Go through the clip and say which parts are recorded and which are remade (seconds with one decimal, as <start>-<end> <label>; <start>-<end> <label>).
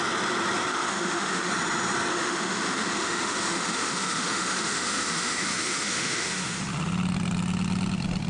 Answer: 0.0-0.7 recorded; 0.7-1.5 remade; 1.5-2.1 recorded; 2.1-6.6 remade; 6.6-8.3 recorded